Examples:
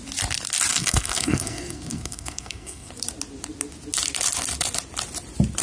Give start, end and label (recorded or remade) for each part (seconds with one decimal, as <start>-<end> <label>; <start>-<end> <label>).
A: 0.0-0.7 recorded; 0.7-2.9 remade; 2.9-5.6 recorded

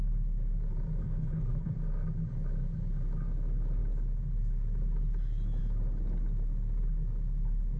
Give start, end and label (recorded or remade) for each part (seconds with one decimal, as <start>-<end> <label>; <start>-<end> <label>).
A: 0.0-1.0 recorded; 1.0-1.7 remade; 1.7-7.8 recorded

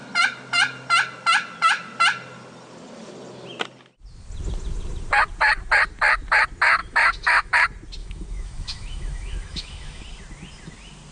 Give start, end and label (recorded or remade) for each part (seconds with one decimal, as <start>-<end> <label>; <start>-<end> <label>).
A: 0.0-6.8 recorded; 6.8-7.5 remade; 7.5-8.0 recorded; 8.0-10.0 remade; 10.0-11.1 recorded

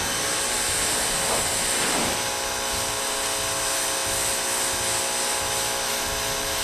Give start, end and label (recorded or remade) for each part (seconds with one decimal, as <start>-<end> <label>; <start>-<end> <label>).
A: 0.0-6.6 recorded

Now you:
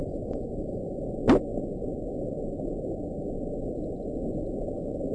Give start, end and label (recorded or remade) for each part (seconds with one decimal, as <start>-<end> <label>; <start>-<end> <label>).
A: 0.0-1.0 remade; 1.0-5.1 recorded